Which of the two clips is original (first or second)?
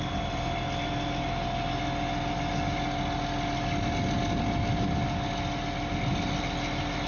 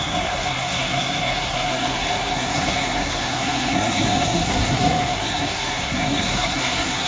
first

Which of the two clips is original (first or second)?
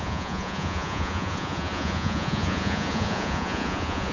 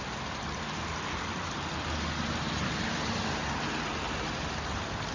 second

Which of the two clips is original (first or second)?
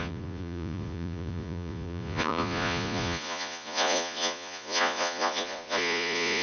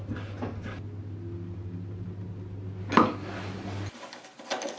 second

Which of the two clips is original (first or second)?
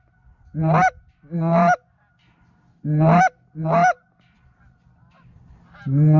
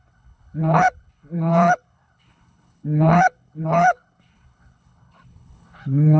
first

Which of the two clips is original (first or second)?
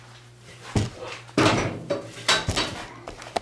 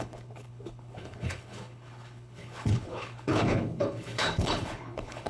first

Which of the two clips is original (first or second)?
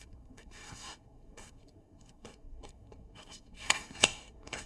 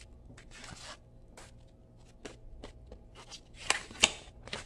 second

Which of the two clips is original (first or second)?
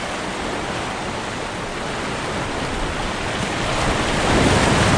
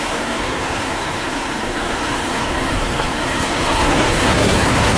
first